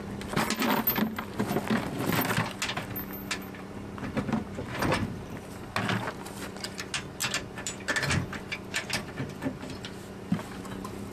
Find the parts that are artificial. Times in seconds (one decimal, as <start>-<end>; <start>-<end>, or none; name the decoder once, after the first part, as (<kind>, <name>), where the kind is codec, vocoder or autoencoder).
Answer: none